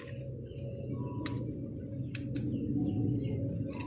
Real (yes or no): yes